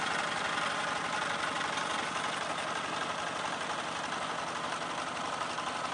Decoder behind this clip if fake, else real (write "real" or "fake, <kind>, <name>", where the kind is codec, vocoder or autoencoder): real